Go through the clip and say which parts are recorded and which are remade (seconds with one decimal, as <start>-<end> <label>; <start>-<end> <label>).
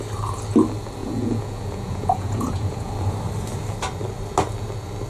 0.0-1.0 recorded; 1.0-2.9 remade; 2.9-5.1 recorded